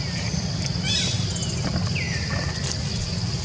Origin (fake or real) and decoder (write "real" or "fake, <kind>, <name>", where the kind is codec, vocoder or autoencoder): real